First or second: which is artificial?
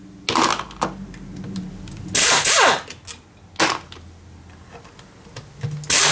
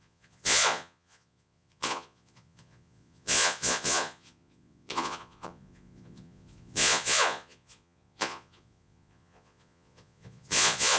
second